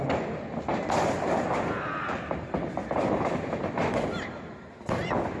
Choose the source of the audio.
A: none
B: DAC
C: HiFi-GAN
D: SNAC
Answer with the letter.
A